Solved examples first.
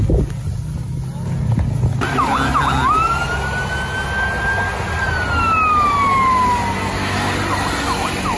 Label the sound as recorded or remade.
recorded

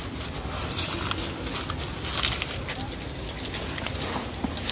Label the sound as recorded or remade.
recorded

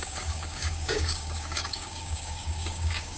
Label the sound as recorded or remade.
remade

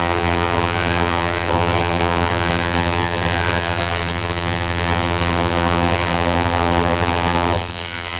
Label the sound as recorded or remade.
remade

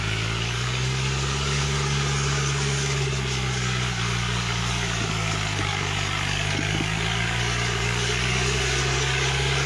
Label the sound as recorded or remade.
remade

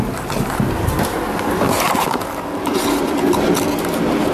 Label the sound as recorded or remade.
recorded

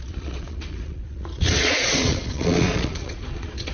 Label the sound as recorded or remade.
remade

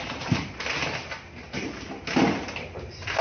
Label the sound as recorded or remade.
recorded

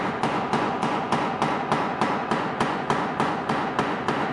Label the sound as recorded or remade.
remade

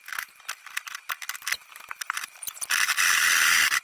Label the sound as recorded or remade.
remade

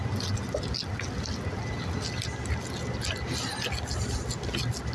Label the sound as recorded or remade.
recorded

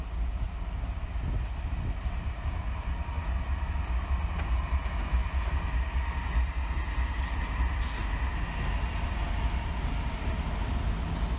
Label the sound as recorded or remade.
recorded